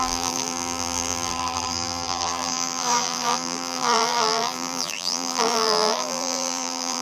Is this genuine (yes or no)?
no